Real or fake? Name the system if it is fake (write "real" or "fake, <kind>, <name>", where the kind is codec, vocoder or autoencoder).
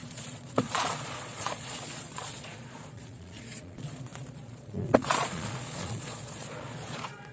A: fake, vocoder, Vocos